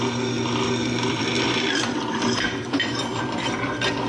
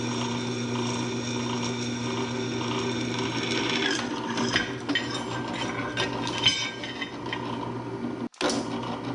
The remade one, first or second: first